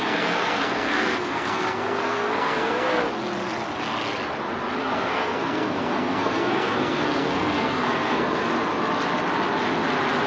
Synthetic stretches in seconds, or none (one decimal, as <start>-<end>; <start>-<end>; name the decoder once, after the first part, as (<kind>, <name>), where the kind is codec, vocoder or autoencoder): 0.0-3.0 (codec, SNAC); 4.8-8.5